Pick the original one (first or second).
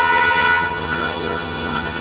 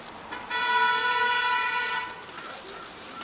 second